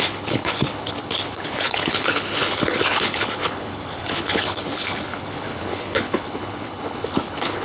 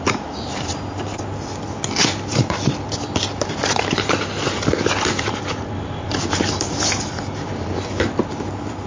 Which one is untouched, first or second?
second